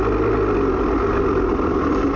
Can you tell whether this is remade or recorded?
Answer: recorded